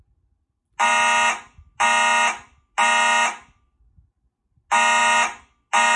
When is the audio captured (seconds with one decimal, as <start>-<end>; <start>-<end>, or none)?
0.0-6.0